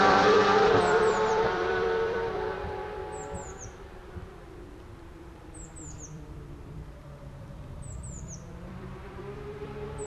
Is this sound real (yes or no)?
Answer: no